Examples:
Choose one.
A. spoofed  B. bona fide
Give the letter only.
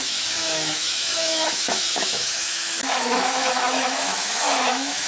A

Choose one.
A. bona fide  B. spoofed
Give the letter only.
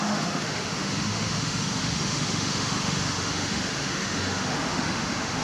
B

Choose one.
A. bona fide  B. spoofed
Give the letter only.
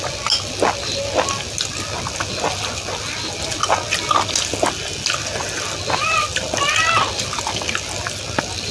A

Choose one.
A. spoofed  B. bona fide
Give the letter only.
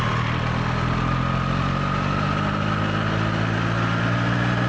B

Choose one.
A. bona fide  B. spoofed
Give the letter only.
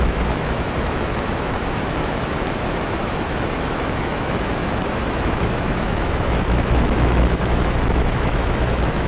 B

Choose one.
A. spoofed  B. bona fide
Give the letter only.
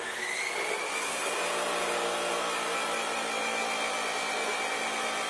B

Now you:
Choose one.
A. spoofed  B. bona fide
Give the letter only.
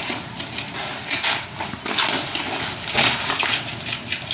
B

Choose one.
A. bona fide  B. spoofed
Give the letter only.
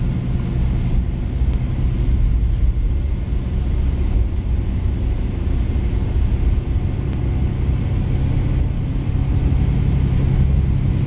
A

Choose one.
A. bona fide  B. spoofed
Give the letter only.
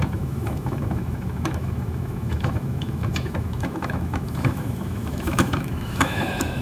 B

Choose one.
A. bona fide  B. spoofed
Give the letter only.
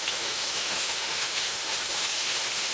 B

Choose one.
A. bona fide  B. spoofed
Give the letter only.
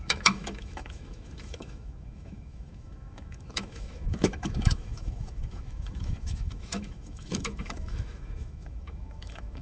B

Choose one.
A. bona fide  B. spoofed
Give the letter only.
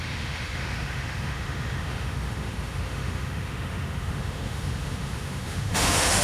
B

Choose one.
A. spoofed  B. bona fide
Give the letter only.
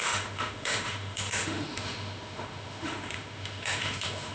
A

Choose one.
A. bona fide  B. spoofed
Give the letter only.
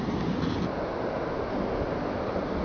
A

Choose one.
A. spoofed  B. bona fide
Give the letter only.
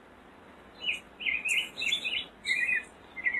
B